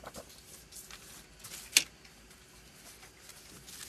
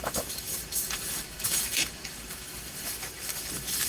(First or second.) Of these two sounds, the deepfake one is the second